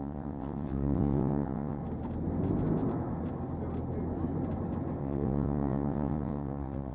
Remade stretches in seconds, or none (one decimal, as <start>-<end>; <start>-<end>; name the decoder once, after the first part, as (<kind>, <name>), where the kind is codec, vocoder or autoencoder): 0.0-1.8 (vocoder, WaveNeXt); 5.0-6.9